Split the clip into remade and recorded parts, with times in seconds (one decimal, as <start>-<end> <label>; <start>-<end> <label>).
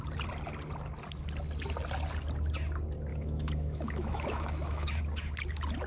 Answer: 0.0-3.1 recorded; 3.1-5.0 remade; 5.0-5.9 recorded